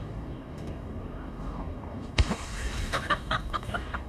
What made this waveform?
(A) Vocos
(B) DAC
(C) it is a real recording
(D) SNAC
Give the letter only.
B